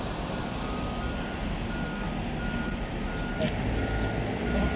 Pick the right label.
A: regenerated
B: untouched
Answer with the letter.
B